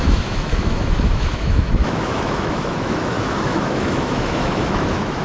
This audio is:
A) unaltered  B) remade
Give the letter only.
B